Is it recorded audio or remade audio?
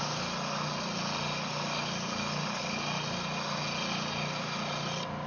recorded